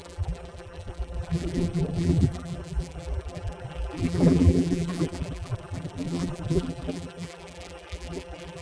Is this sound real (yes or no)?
no